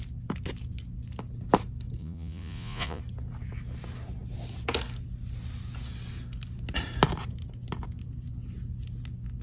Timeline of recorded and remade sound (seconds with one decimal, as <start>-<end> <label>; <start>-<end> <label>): 0.0-2.0 recorded; 2.0-3.0 remade; 3.0-9.4 recorded